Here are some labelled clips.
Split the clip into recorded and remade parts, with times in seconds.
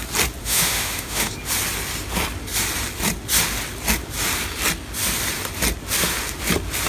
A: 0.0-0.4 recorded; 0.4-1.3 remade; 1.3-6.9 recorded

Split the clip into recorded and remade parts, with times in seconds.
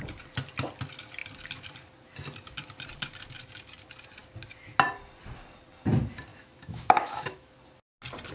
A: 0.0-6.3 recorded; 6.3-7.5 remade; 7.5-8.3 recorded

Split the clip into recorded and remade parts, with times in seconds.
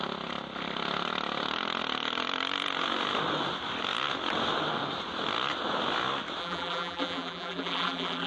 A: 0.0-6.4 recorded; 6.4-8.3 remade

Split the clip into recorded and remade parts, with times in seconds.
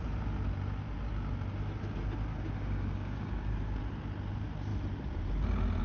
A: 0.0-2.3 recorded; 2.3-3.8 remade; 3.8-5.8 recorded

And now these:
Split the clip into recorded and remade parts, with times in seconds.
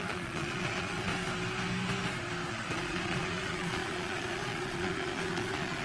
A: 0.0-1.1 remade; 1.1-2.5 recorded; 2.5-5.8 remade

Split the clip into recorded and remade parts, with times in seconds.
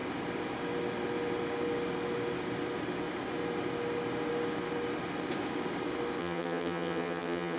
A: 0.0-6.2 recorded; 6.2-7.6 remade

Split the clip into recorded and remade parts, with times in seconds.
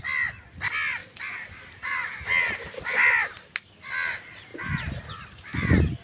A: 0.0-1.0 recorded; 1.0-2.1 remade; 2.1-4.5 recorded; 4.5-5.0 remade; 5.0-6.0 recorded